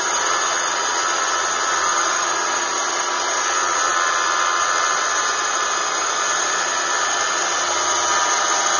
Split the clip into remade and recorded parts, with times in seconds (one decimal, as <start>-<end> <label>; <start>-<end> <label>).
0.0-8.8 recorded